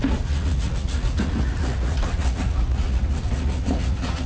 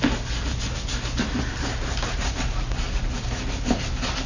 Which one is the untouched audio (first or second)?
second